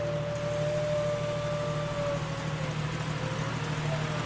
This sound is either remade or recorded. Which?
recorded